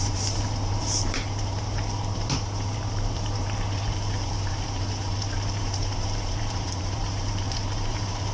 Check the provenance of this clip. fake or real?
fake